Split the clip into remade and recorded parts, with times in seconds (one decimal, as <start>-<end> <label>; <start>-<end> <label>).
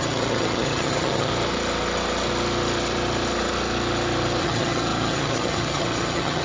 0.0-1.3 remade; 1.3-4.4 recorded; 4.4-6.4 remade